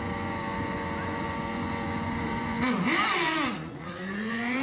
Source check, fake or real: fake